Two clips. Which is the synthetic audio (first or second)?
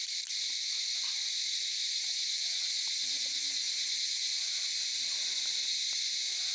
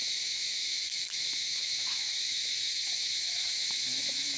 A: second